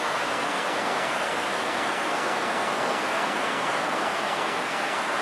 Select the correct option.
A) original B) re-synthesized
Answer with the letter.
B